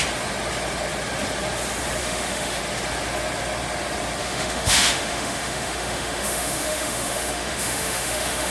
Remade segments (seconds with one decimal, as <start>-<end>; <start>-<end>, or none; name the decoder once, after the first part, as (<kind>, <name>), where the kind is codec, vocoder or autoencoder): 2.0-2.6 (autoencoder, DAC-VAE); 4.2-8.5